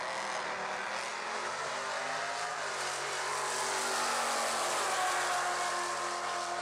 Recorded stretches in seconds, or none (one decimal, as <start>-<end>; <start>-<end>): 0.0-1.1; 1.7-2.5; 3.3-6.6